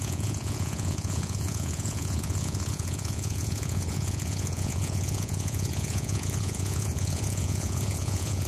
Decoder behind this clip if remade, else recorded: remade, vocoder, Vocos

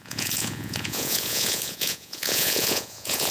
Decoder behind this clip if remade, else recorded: remade, vocoder, Vocos